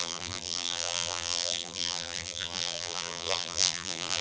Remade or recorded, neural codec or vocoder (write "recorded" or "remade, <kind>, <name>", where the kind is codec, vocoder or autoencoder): remade, vocoder, BigVGAN v2